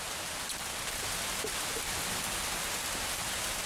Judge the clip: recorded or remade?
recorded